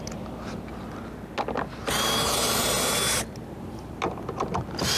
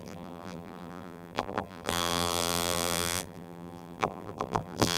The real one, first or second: first